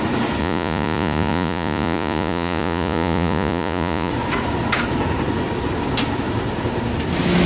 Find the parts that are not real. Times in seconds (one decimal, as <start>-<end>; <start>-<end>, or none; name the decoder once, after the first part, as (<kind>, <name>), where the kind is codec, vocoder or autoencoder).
0.4-4.1 (vocoder, Vocos)

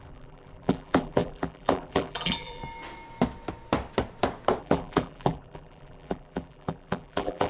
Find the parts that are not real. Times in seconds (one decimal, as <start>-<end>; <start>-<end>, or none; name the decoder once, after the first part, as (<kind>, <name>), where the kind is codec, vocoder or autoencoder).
0.0-2.6 (vocoder, BigVGAN v2); 4.6-7.5

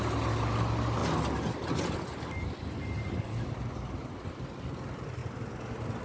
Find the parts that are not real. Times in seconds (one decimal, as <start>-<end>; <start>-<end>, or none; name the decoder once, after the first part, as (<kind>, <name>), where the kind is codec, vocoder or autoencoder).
none

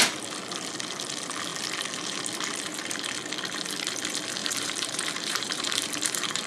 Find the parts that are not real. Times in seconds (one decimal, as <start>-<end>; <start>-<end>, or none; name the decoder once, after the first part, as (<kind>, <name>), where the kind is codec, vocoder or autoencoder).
4.4-6.5 (vocoder, BigVGAN v2)